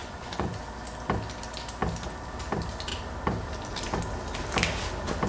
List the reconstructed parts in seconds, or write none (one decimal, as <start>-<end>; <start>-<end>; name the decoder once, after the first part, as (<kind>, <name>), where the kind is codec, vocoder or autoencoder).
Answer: 0.0-0.6 (vocoder, Vocos)

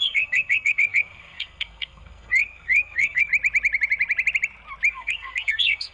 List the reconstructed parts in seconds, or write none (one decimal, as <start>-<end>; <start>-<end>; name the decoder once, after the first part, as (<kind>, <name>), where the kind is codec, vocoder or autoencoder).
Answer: 0.0-3.3 (codec, SNAC); 4.9-5.9

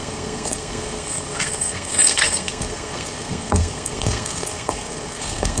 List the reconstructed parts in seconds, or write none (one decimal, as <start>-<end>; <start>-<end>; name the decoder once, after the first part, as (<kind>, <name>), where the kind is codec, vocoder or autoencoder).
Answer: 0.0-5.6 (codec, SNAC)

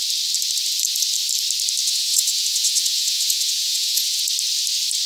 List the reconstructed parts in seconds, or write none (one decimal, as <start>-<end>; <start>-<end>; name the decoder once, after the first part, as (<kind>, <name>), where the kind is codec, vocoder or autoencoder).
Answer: 1.8-4.2 (vocoder, Vocos)

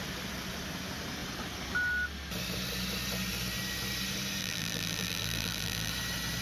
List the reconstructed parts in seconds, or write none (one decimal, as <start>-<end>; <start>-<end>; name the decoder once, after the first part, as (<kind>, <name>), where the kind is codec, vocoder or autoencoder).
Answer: 4.4-5.9 (vocoder, BigVGAN v2)

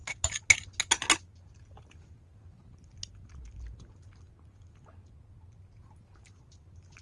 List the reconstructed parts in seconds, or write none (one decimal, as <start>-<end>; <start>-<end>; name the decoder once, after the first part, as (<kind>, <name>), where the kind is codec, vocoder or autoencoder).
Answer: none